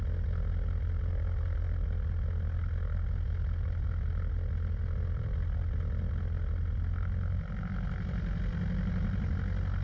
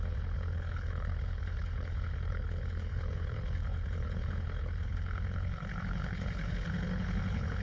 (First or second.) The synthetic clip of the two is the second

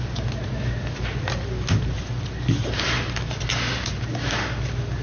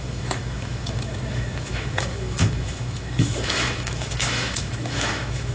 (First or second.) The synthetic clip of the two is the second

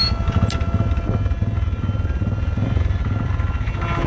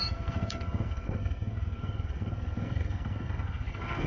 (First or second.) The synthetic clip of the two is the second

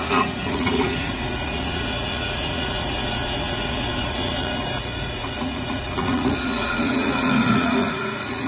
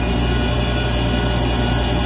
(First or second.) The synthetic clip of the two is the first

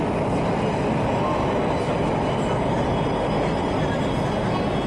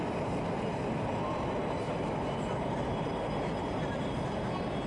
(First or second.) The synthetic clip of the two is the second